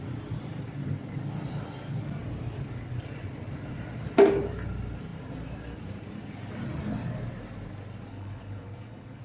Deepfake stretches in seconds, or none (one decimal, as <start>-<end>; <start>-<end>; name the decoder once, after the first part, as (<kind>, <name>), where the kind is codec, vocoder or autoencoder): 8.1-9.2 (codec, HILCodec)